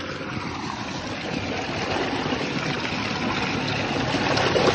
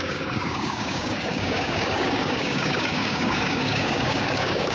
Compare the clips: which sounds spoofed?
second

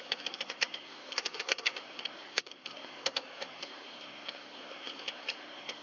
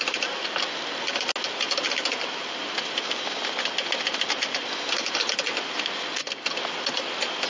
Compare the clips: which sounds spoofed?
first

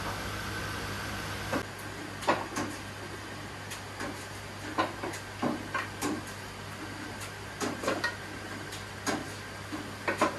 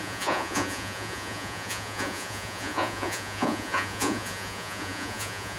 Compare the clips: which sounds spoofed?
second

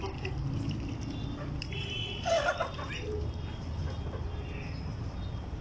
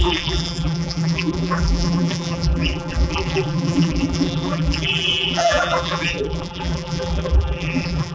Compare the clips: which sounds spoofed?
second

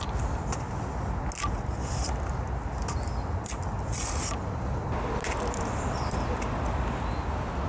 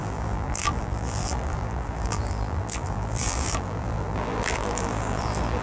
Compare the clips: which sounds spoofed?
second